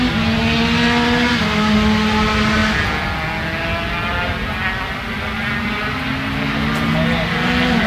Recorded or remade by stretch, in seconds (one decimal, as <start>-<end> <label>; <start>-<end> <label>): 0.0-7.9 recorded